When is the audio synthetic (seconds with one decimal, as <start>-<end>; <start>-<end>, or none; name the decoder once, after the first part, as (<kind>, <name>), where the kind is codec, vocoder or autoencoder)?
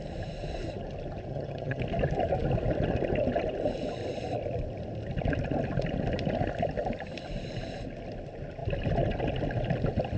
1.3-1.8 (vocoder, HiFi-GAN)